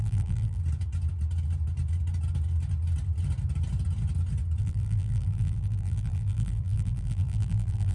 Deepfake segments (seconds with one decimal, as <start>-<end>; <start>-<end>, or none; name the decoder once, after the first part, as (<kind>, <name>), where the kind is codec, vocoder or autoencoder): 0.0-0.6 (vocoder, BigVGAN v2); 4.6-7.9